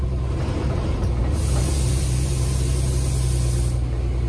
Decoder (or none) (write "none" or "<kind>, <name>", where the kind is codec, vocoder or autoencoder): none